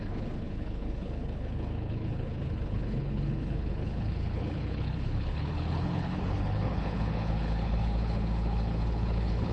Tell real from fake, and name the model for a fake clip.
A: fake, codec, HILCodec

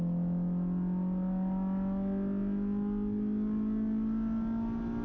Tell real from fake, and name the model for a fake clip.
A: real